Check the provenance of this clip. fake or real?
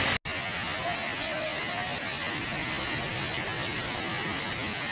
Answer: real